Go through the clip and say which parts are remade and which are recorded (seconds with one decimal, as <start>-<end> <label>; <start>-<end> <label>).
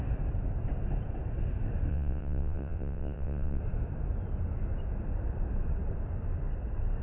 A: 0.0-1.9 recorded; 1.9-3.6 remade; 3.6-7.0 recorded